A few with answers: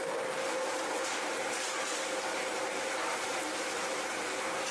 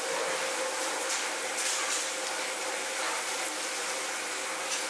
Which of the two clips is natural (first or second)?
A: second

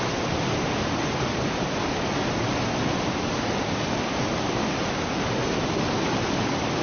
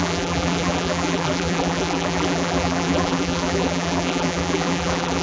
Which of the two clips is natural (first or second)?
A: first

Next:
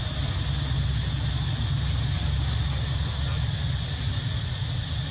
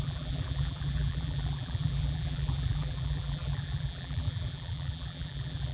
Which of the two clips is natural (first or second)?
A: first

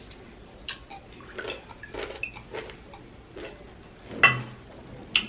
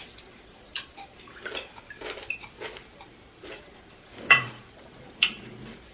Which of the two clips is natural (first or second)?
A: first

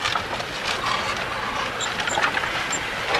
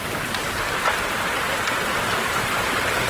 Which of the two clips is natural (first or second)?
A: first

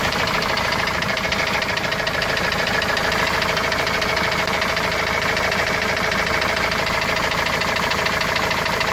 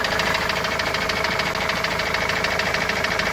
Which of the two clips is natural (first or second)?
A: second